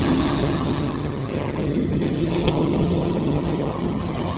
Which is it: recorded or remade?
remade